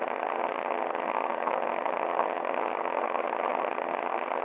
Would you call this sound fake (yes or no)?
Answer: yes